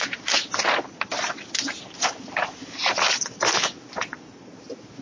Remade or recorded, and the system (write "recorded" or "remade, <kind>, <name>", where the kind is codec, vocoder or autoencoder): recorded